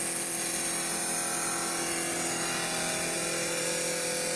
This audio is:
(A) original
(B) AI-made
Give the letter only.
A